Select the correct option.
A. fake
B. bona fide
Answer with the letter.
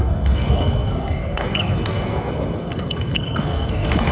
A